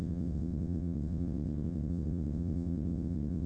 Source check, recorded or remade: remade